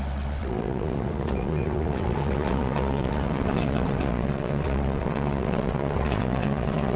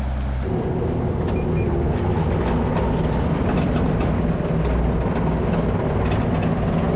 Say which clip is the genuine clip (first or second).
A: second